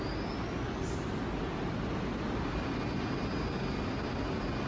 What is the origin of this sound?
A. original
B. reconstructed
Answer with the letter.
A